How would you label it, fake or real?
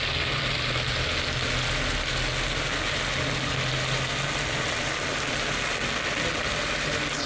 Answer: real